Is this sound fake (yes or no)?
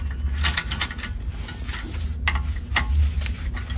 no